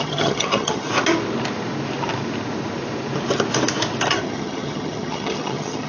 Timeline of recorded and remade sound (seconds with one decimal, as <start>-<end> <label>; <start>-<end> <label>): 0.0-0.9 remade; 0.9-4.1 recorded; 4.1-5.9 remade